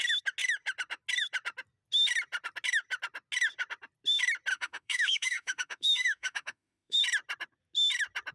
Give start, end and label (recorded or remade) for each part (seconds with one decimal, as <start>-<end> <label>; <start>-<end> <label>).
0.0-4.5 recorded; 4.5-7.0 remade; 7.0-8.3 recorded